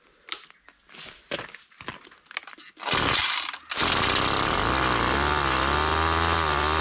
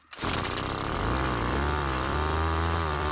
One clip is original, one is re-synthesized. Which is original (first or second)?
first